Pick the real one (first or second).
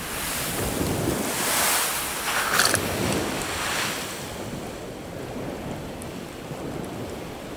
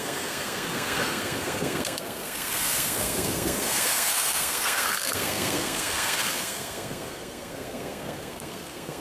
first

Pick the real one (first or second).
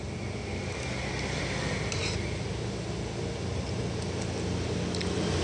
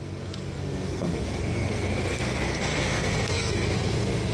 first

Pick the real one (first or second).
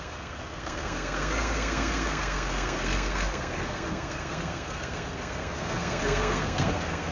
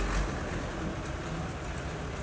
second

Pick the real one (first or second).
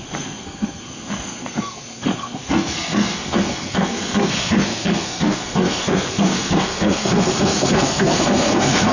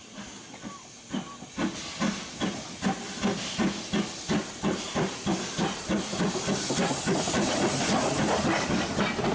second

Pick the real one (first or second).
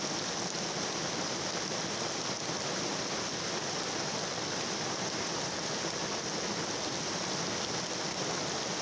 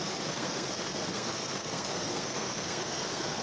first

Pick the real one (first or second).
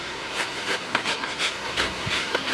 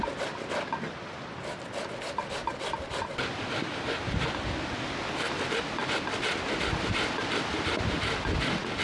second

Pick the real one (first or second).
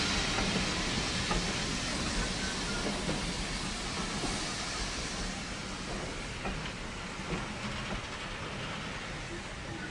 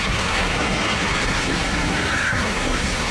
first